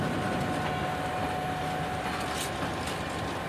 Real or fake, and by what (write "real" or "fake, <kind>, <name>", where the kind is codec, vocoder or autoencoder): real